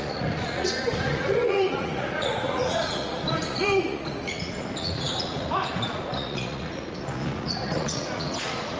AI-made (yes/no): yes